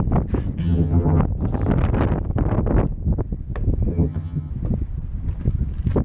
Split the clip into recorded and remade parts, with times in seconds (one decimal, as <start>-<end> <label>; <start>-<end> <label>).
0.0-0.6 recorded; 0.6-1.2 remade; 1.2-3.9 recorded; 3.9-4.5 remade; 4.5-6.0 recorded